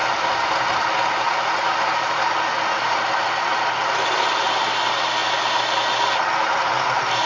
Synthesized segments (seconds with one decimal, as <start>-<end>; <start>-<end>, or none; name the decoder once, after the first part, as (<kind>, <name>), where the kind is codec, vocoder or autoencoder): none